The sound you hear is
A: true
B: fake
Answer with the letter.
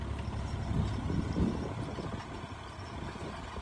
A